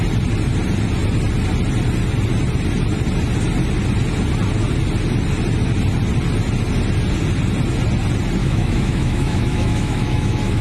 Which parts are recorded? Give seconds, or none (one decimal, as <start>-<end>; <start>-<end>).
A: 0.0-8.4